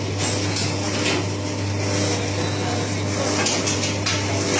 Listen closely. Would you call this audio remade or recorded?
recorded